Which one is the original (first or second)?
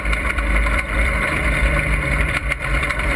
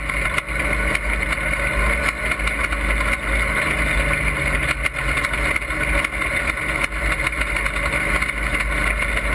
second